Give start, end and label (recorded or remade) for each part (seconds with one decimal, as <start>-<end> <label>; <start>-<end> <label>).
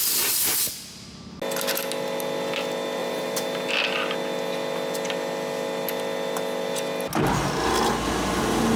0.0-3.0 recorded; 3.0-3.7 remade; 3.7-8.8 recorded